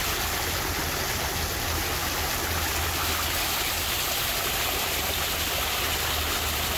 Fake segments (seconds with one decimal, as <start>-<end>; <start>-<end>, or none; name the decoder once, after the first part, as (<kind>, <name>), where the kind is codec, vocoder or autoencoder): none